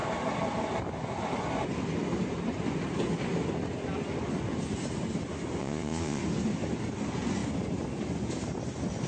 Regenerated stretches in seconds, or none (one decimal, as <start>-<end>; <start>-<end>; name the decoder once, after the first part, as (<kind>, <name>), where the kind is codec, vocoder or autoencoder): 5.6-6.2 (vocoder, Vocos)